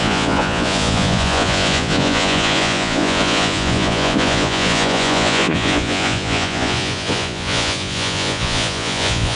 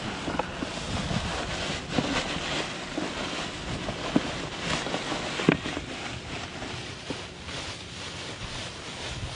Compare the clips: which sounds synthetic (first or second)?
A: first